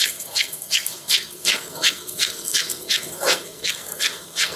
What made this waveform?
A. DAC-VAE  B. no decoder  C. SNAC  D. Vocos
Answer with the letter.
C